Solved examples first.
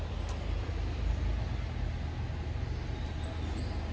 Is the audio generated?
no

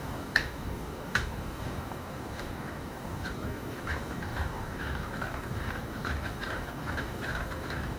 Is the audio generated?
yes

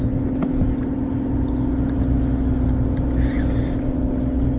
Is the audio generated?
no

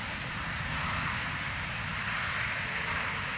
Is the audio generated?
no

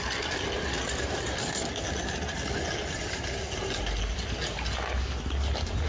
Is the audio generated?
no